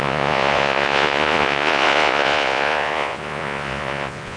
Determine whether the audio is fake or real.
fake